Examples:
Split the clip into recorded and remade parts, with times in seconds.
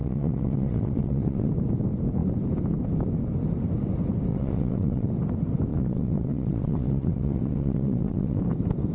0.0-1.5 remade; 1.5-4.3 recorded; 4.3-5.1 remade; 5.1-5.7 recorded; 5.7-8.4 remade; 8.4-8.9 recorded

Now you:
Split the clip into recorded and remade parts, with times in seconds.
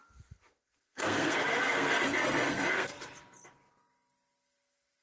0.0-3.0 remade; 3.0-5.0 recorded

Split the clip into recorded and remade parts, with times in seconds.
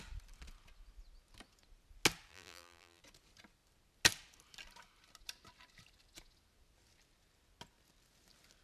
0.0-2.3 recorded; 2.3-3.0 remade; 3.0-8.6 recorded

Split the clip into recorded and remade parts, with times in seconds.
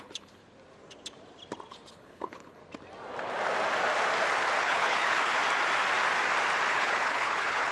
0.0-0.4 remade; 0.4-1.9 recorded; 1.9-2.6 remade; 2.6-4.6 recorded; 4.6-5.4 remade; 5.4-6.7 recorded; 6.7-7.7 remade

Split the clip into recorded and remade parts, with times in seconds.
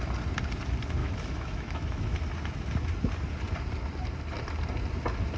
0.0-1.0 recorded; 1.0-2.2 remade; 2.2-5.4 recorded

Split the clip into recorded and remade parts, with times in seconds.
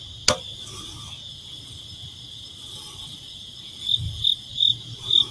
0.0-1.3 recorded; 1.3-4.5 remade; 4.5-5.3 recorded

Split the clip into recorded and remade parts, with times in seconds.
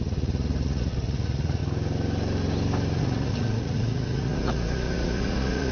0.0-1.6 remade; 1.6-3.0 recorded; 3.0-5.7 remade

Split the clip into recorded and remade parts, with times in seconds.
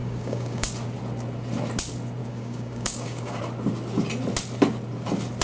0.0-0.7 remade; 0.7-2.2 recorded; 2.2-3.4 remade; 3.4-5.4 recorded